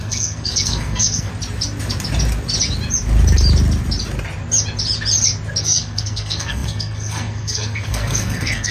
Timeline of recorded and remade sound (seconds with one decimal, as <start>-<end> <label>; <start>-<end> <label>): 0.0-1.3 remade; 1.3-5.6 recorded; 5.6-8.7 remade